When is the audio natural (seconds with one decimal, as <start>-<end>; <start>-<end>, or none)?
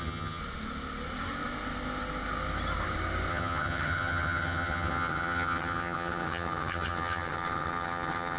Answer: 0.4-3.3